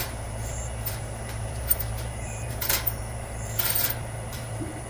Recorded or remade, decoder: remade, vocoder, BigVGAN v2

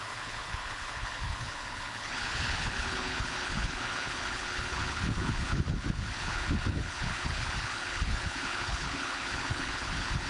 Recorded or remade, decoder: remade, codec, HILCodec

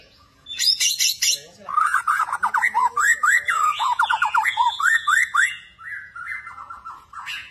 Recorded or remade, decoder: remade, vocoder, Vocos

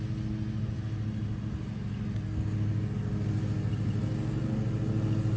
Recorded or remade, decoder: recorded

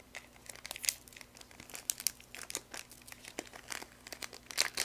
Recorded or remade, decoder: recorded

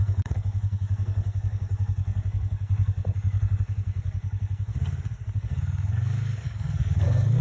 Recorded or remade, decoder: remade, codec, SNAC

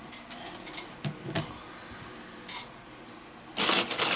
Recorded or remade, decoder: recorded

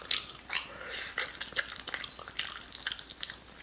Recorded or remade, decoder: recorded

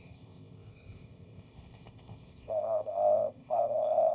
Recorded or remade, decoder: remade, codec, ZipCodec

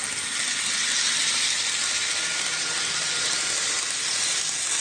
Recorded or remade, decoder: recorded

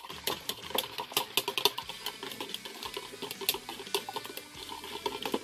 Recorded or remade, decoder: recorded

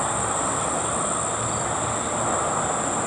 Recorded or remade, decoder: recorded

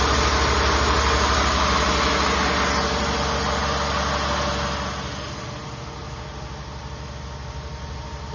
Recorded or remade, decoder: recorded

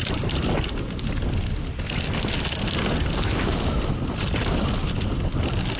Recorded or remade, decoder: recorded